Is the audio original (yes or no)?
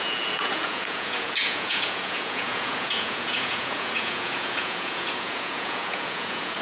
no